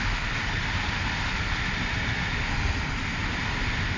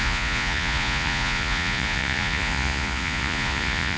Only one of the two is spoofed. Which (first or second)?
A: second